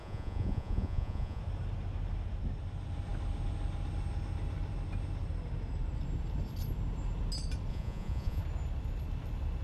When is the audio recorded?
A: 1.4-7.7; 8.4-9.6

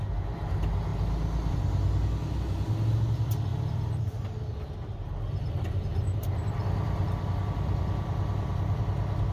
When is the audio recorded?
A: 0.0-3.5; 4.2-5.9; 8.8-9.3

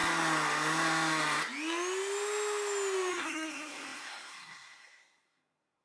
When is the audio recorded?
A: 0.0-3.1

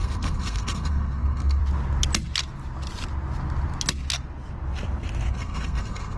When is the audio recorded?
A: 1.6-5.3

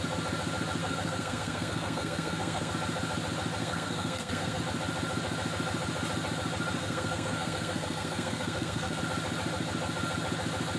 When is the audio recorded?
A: 0.0-0.8; 2.7-3.6; 4.6-6.8; 9.0-10.8

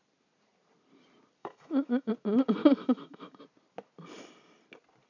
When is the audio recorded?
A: 0.0-1.4; 2.1-2.6; 3.4-5.1

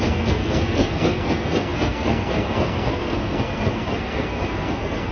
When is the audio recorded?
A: none